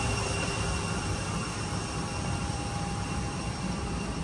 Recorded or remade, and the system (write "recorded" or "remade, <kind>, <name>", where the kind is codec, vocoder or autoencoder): remade, vocoder, BigVGAN v2